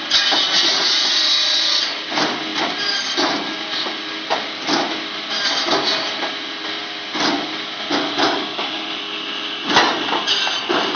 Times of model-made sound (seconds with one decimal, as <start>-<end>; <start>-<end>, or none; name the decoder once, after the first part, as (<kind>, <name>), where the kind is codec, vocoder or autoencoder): none

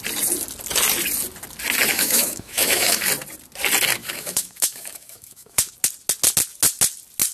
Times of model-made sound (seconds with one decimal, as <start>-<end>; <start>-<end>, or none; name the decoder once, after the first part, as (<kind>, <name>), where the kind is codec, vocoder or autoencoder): 1.9-3.1 (autoencoder, DAC-VAE); 4.0-5.7

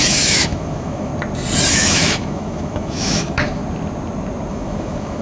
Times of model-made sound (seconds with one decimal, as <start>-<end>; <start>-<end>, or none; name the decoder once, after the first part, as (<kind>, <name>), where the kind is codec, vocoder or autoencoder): 0.0-1.1 (autoencoder, DAC-VAE); 1.7-3.6; 4.5-5.2

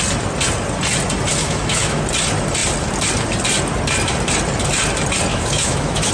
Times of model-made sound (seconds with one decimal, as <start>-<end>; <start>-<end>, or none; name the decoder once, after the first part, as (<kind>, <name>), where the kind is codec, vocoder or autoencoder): 1.4-2.0 (autoencoder, DAC-VAE); 5.3-6.1

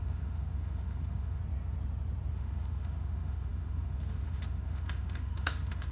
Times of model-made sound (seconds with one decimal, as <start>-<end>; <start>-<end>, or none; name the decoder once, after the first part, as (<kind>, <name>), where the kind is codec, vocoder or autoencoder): 0.0-1.4 (autoencoder, DAC-VAE); 2.3-5.9

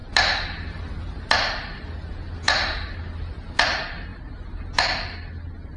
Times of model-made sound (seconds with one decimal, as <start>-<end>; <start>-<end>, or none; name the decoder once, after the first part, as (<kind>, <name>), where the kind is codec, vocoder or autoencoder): none

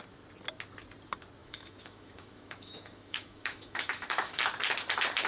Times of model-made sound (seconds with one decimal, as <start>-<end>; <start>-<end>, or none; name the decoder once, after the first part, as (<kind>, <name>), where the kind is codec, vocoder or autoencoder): 1.4-4.5 (autoencoder, DAC-VAE)

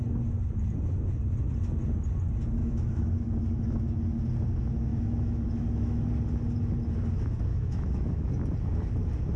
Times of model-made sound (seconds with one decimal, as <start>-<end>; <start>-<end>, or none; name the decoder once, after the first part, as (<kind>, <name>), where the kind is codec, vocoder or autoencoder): 2.6-3.2 (autoencoder, DAC-VAE); 4.9-6.0; 7.5-8.3